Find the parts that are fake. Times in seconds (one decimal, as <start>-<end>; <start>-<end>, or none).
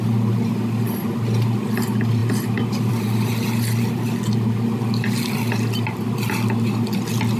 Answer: none